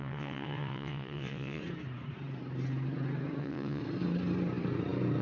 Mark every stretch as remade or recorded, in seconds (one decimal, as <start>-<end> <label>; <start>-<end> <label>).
0.0-1.6 remade; 1.6-3.4 recorded; 3.4-3.8 remade; 3.8-5.2 recorded